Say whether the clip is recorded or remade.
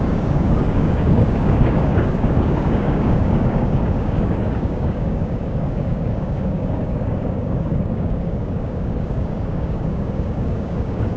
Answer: remade